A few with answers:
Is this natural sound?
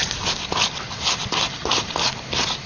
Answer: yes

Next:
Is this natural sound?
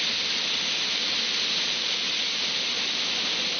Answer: yes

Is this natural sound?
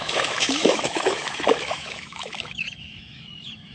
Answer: no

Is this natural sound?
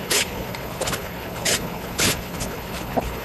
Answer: no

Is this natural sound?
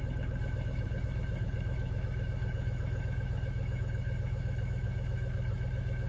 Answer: no